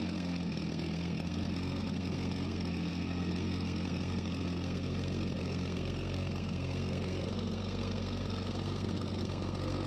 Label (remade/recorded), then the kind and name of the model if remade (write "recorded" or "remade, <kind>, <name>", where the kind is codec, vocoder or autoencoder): remade, codec, SNAC